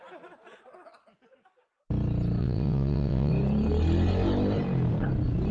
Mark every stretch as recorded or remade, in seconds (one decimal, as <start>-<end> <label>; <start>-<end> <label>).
0.0-2.4 recorded; 2.4-3.3 remade; 3.3-5.5 recorded